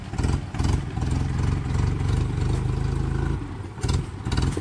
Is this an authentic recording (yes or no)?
yes